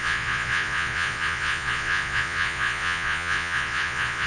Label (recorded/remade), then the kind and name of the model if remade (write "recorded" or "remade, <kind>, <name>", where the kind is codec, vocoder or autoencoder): remade, vocoder, Vocos